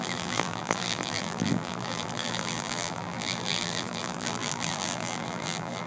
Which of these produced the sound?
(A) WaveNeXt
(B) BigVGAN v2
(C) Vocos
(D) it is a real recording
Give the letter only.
B